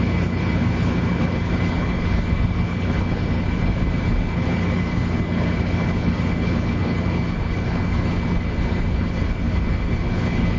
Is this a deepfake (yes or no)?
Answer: yes